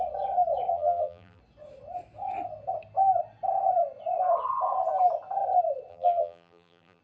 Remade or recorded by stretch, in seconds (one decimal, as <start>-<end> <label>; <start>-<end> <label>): 0.0-0.7 recorded; 0.7-1.4 remade; 1.4-5.9 recorded; 5.9-7.0 remade